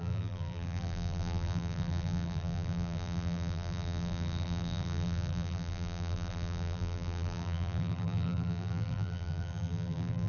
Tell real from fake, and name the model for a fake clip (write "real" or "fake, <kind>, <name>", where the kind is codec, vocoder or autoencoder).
fake, vocoder, BigVGAN v2